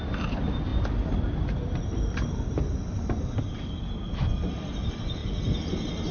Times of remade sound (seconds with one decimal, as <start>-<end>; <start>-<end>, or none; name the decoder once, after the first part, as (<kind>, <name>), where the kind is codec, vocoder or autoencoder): none